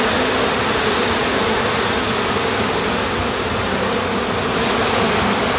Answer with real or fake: real